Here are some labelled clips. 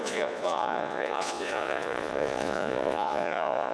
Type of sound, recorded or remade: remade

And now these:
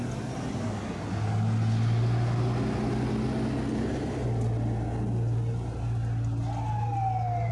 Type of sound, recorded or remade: recorded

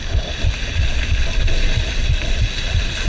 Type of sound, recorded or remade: recorded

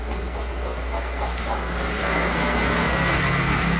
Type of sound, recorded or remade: remade